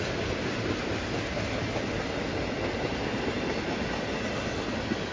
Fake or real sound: real